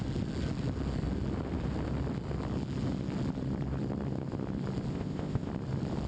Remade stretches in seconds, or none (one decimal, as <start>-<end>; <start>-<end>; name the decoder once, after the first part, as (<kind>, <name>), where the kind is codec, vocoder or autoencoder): 4.9-5.5 (codec, ZipCodec)